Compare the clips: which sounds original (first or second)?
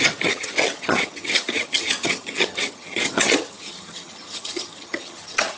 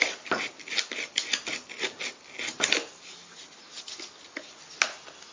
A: second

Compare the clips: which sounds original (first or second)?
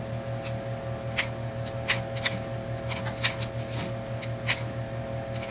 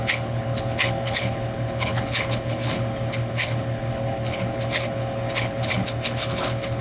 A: first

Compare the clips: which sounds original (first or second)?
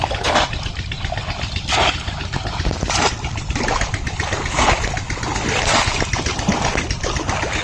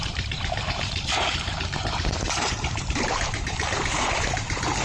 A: first